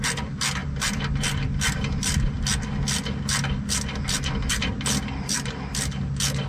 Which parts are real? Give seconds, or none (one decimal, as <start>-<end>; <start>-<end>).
0.0-6.5